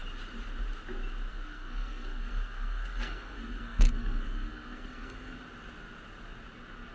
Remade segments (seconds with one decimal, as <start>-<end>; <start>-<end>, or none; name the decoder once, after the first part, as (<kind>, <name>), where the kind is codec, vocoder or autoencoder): 1.3-5.4 (codec, SNAC)